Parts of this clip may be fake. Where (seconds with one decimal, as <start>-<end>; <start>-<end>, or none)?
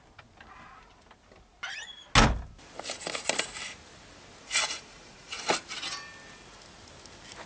4.4-5.5